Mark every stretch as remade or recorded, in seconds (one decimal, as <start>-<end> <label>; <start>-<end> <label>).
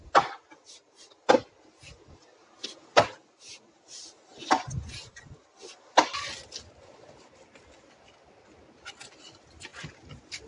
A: 0.0-10.5 recorded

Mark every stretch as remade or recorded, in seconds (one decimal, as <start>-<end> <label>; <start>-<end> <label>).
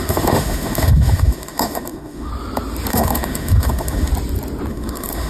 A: 0.0-2.3 remade; 2.3-2.9 recorded; 2.9-4.1 remade; 4.1-4.7 recorded; 4.7-5.3 remade